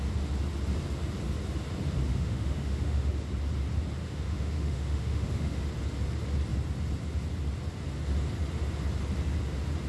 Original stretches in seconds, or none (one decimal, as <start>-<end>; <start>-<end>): 0.0-2.1; 3.1-4.0; 5.6-9.9